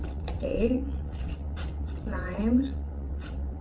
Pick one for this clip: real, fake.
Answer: fake